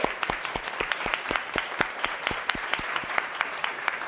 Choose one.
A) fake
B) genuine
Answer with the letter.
A